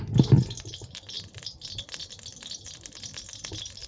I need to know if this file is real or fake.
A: real